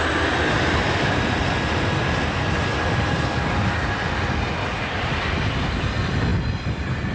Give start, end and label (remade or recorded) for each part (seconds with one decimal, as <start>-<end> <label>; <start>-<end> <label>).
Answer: 0.0-7.1 recorded